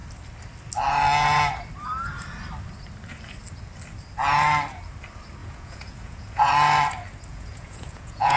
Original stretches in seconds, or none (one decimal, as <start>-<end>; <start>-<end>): 0.0-5.4; 6.5-7.3